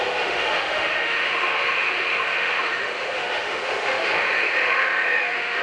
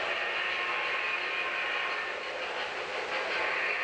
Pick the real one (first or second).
second